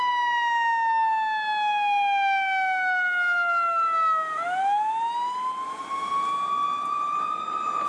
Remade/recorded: recorded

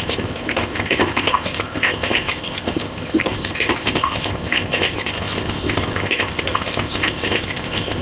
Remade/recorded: remade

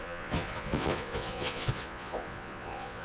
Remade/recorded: remade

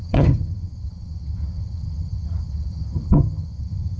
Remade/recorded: remade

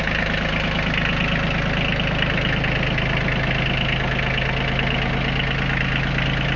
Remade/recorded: recorded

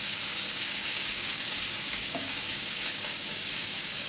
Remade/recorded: remade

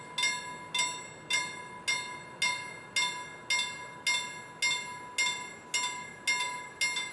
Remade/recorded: recorded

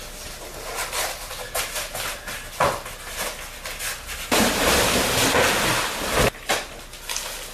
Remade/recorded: recorded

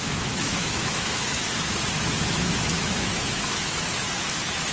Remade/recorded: remade